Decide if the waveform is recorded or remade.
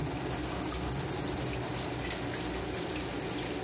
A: recorded